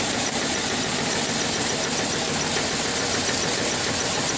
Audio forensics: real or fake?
real